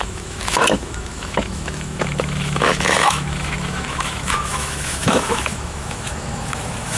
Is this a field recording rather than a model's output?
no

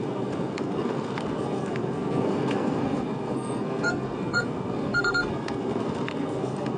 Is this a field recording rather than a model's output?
no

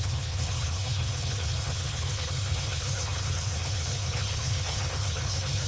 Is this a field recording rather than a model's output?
no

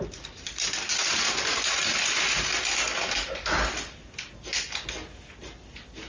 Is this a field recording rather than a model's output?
yes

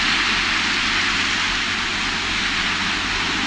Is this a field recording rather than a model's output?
yes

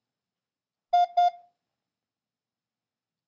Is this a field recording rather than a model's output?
yes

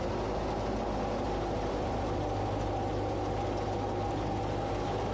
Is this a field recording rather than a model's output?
yes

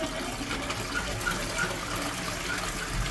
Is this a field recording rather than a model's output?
yes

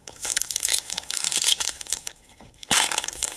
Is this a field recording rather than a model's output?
no